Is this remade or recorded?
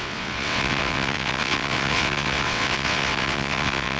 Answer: remade